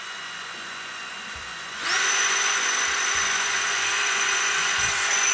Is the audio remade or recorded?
remade